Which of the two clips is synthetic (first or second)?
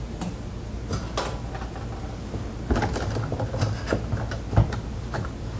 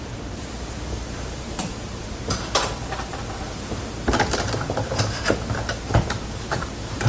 second